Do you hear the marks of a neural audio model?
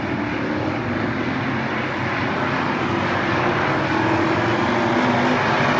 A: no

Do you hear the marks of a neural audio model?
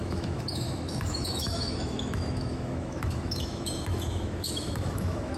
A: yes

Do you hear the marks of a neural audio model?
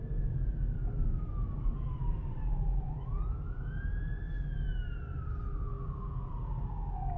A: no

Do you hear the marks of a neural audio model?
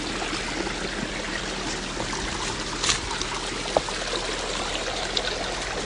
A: no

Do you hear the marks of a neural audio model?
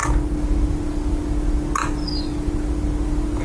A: no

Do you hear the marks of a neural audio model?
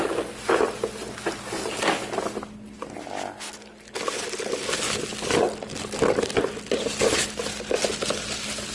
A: no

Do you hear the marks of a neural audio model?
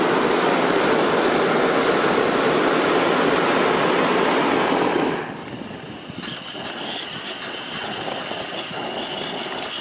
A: no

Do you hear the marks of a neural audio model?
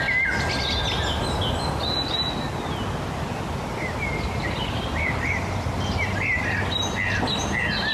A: no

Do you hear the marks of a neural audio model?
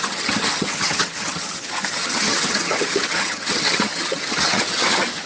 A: yes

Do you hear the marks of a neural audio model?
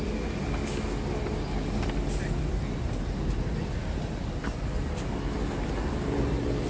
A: no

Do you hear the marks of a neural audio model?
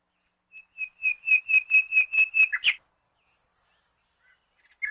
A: no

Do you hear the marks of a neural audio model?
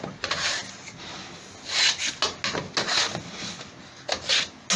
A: no